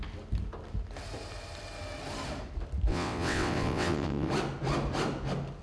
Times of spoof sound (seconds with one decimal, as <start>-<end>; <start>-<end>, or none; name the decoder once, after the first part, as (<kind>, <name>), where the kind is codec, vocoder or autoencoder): 2.9-4.3 (vocoder, WaveNeXt)